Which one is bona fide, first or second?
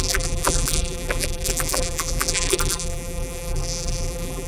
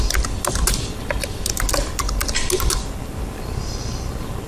second